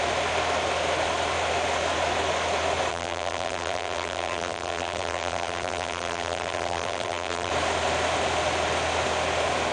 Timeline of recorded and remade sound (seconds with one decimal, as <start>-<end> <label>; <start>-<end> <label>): 0.0-2.9 recorded; 2.9-7.5 remade; 7.5-9.7 recorded